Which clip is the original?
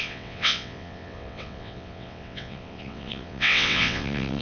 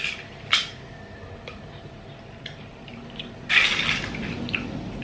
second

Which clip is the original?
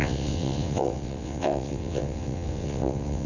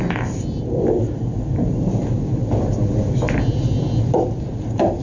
second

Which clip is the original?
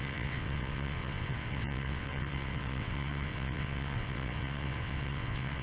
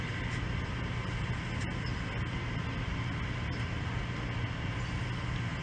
second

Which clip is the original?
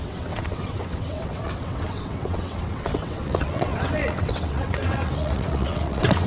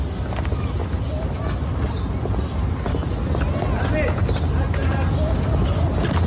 second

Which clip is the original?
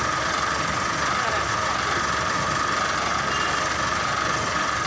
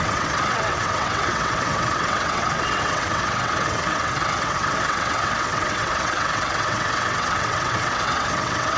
first